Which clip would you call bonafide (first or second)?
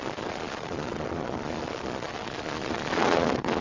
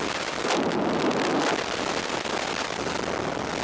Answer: second